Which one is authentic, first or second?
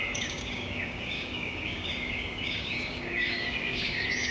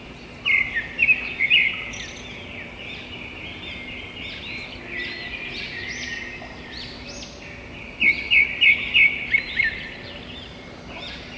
second